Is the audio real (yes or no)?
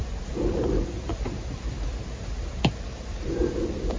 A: yes